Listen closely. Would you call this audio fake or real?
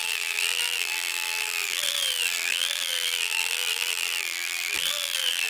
fake